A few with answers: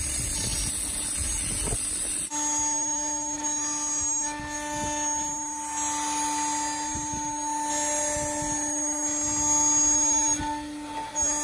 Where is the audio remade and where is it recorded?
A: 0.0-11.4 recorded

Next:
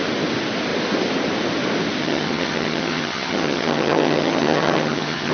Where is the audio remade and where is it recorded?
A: 0.0-2.0 recorded; 2.0-5.3 remade

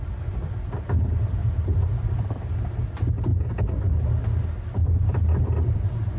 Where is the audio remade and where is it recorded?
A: 0.0-1.4 recorded; 1.4-2.5 remade; 2.5-4.8 recorded; 4.8-6.2 remade